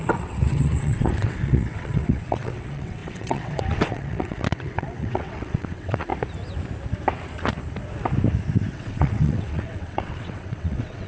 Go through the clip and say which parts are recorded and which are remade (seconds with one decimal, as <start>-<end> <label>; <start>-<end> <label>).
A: 0.0-6.1 remade; 6.1-8.7 recorded; 8.7-11.1 remade